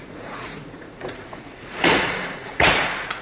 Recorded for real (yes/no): no